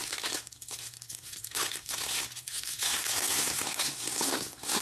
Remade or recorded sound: remade